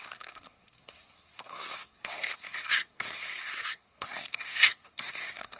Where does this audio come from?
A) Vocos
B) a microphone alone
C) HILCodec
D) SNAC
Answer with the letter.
D